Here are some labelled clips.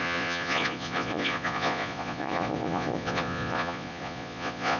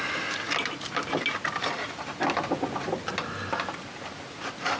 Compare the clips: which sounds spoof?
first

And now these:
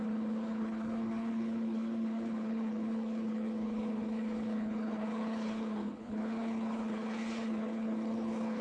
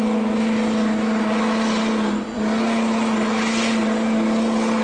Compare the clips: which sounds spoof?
first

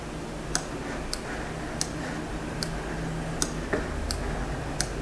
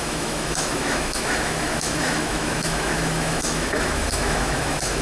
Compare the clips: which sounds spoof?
second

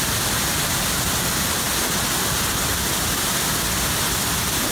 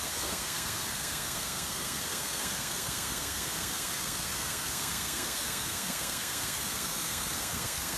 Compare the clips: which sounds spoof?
second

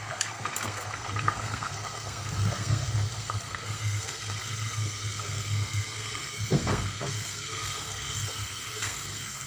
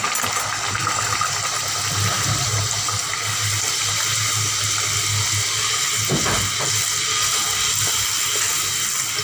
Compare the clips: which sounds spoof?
first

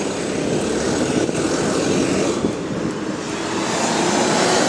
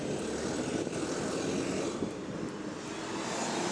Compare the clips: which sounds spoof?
first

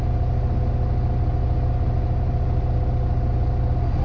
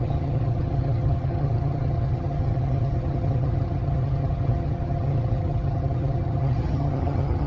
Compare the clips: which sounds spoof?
second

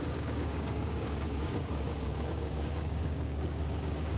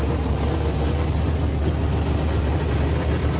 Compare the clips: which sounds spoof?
first